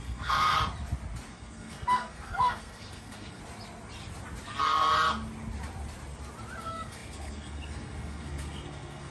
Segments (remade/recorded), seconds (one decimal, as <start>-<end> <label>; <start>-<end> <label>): 0.0-0.6 remade; 0.6-1.3 recorded; 1.3-3.4 remade; 3.4-6.6 recorded; 6.6-9.1 remade